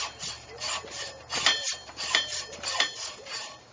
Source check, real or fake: fake